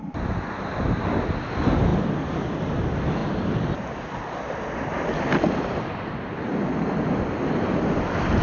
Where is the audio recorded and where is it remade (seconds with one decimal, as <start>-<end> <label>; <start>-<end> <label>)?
0.0-8.4 recorded